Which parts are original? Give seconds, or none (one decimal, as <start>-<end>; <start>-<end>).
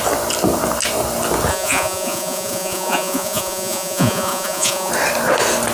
0.0-1.5; 4.9-5.7